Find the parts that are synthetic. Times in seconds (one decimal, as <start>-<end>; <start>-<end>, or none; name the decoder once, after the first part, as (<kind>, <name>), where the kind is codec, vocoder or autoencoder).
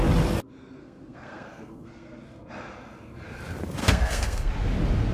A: 0.8-2.2 (codec, SNAC); 3.8-4.5